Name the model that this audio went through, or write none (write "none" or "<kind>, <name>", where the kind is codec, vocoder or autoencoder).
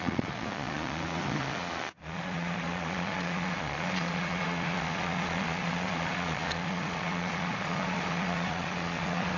vocoder, Vocos